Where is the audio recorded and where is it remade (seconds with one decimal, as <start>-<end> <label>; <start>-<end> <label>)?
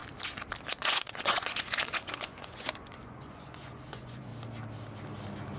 0.0-0.7 recorded; 0.7-4.3 remade; 4.3-5.6 recorded